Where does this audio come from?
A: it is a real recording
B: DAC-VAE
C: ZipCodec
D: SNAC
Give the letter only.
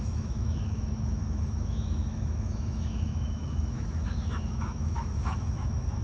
B